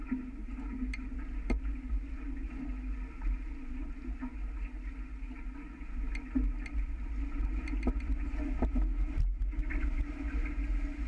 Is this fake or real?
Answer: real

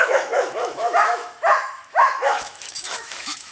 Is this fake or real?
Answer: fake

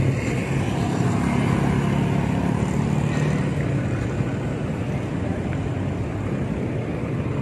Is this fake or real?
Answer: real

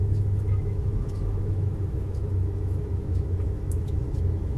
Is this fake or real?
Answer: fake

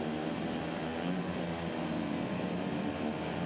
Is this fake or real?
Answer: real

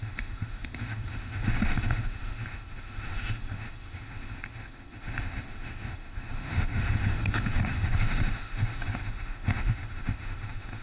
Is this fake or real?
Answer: fake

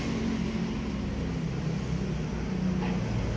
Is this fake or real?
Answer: real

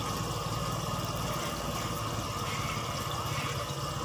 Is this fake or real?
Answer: real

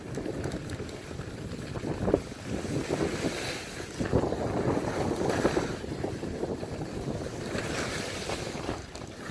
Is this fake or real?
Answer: real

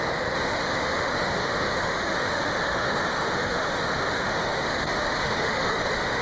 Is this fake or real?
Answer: fake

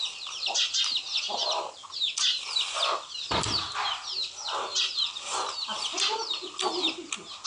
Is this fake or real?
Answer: real